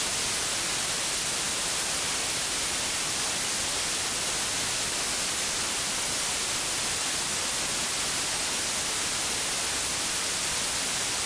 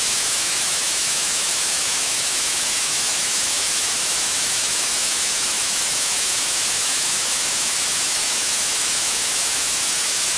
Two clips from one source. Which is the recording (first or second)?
first